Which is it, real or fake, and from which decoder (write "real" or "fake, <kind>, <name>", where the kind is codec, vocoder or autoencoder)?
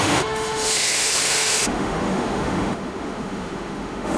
fake, autoencoder, DAC-VAE